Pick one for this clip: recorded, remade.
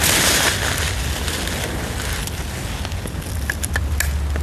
recorded